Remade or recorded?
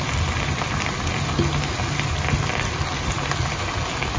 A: recorded